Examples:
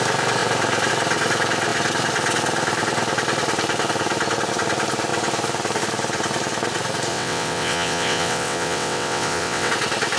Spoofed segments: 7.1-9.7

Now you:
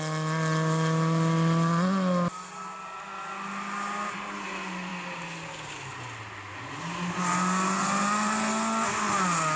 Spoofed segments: none

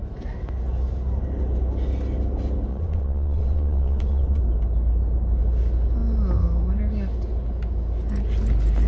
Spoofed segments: 2.7-4.4